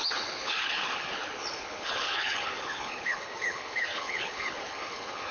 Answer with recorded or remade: remade